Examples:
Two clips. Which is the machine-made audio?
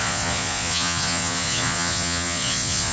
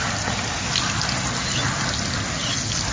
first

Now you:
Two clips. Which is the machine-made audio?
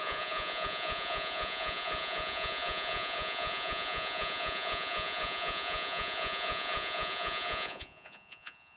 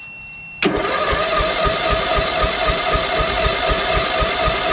first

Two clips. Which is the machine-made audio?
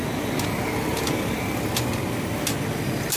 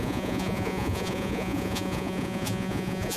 second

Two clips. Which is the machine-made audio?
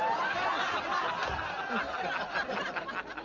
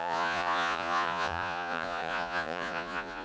second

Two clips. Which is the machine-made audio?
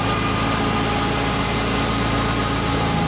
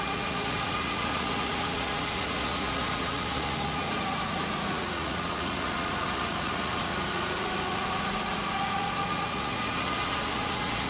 second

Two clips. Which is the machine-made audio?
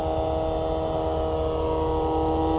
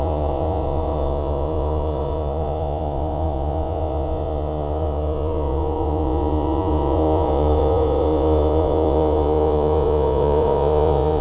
second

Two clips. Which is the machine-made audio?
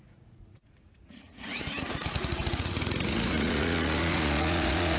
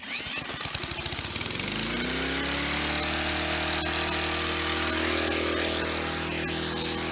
first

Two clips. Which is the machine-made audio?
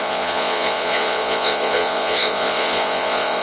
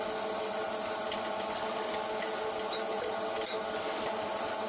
first